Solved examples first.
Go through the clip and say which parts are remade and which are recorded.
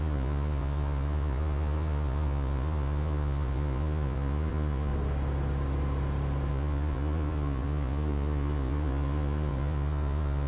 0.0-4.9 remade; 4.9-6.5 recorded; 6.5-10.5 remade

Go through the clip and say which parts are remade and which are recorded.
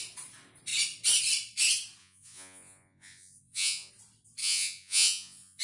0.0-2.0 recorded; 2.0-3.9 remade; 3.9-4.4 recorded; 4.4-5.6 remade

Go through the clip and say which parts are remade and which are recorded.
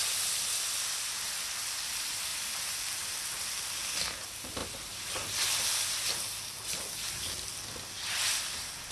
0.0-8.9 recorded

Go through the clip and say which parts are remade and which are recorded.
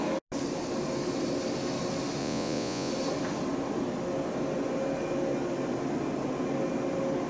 0.0-2.2 recorded; 2.2-2.9 remade; 2.9-7.3 recorded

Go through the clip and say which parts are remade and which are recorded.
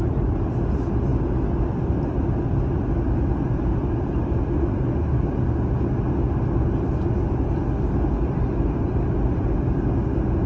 0.0-10.5 recorded